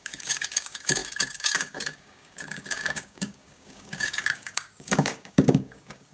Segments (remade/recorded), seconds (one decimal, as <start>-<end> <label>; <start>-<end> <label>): 0.0-6.1 remade